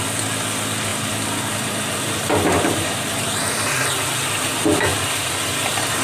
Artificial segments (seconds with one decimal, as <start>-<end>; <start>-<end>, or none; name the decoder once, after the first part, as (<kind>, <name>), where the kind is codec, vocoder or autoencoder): 0.9-4.5 (vocoder, BigVGAN v2); 4.9-6.0